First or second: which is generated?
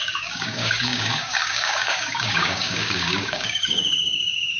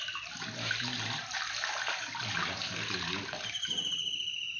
first